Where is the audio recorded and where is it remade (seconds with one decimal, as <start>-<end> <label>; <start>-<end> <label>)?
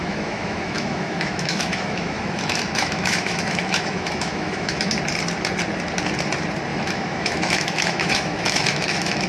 0.0-4.9 remade; 4.9-6.7 recorded; 6.7-9.3 remade